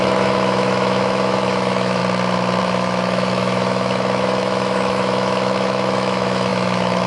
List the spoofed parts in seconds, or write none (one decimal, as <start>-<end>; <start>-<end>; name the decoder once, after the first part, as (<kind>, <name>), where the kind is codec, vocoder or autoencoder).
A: 0.0-2.0 (autoencoder, DAC-VAE); 2.6-7.1